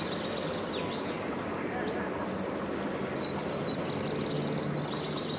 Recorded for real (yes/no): yes